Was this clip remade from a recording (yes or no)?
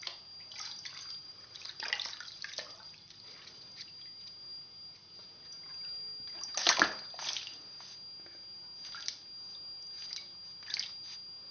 no